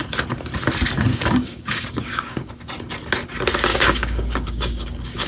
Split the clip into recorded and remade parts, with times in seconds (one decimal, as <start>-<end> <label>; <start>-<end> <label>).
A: 0.0-1.1 recorded; 1.1-2.5 remade; 2.5-3.7 recorded; 3.7-5.3 remade